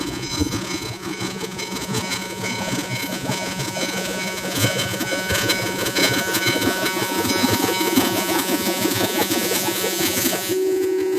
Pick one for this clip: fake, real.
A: fake